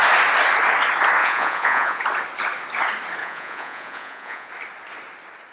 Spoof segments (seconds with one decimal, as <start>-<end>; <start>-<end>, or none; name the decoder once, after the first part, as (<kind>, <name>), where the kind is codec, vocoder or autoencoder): 1.2-2.0 (vocoder, Vocos); 3.2-4.5